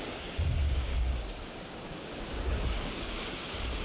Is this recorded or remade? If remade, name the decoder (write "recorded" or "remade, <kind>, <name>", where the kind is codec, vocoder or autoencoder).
remade, codec, DAC